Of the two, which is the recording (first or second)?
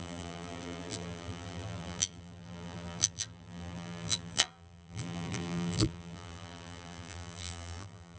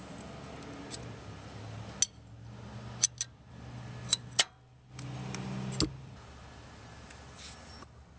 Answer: second